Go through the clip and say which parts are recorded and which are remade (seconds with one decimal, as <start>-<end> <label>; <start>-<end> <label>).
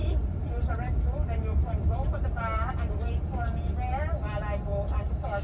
0.0-0.5 remade; 0.5-1.6 recorded; 1.6-2.7 remade; 2.7-5.4 recorded